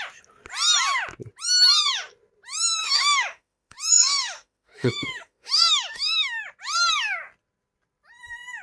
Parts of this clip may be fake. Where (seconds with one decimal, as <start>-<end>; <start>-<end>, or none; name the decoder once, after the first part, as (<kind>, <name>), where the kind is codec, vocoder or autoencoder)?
2.8-6.4 (autoencoder, DAC-VAE)